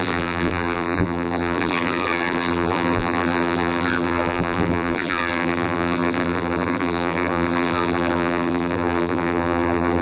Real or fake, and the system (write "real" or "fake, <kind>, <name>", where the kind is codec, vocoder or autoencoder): fake, vocoder, BigVGAN v2